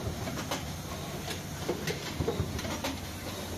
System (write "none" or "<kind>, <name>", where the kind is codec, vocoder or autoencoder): none